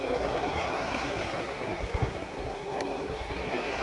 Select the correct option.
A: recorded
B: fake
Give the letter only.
B